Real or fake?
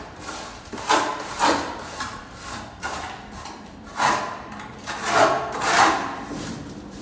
fake